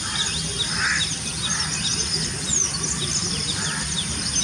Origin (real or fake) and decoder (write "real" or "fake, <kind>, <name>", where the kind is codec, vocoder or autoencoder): real